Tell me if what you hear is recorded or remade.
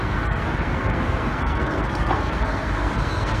remade